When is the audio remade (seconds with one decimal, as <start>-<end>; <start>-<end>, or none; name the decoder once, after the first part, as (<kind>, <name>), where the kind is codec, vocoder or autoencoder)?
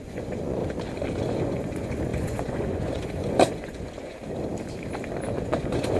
0.0-0.6 (vocoder, Vocos); 1.2-4.2; 5.3-6.0